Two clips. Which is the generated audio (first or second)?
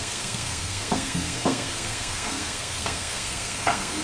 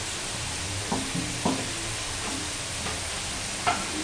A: first